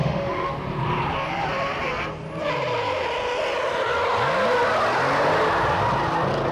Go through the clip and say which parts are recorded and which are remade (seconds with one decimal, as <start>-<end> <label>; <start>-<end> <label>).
0.0-0.5 remade; 0.5-6.5 recorded